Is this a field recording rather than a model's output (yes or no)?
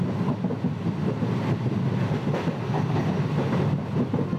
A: yes